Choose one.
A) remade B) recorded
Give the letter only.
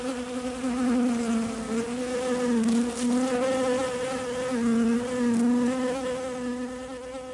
B